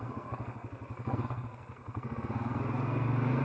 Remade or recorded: remade